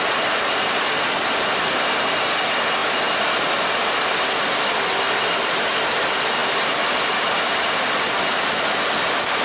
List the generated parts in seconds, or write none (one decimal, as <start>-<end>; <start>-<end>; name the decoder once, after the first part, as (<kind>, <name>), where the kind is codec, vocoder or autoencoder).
none